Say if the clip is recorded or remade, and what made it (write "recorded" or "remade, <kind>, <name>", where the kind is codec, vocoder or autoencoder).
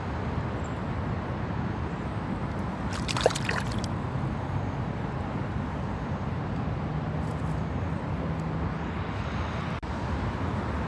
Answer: recorded